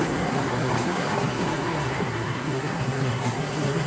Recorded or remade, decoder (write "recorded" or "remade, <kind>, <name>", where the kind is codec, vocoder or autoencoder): remade, codec, SNAC